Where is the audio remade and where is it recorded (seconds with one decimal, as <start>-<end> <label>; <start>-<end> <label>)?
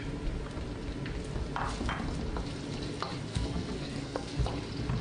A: 0.0-3.3 recorded; 3.3-4.4 remade; 4.4-5.0 recorded